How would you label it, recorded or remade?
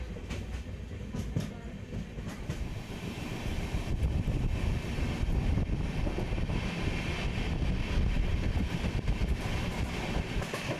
recorded